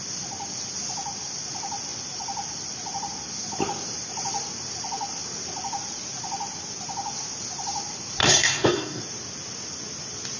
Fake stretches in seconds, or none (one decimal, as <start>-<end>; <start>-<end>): 8.2-9.0